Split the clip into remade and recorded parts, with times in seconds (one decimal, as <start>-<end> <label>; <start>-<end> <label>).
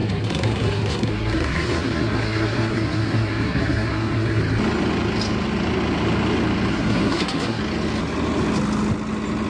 0.0-4.4 remade; 4.4-6.7 recorded; 6.7-7.6 remade; 7.6-9.5 recorded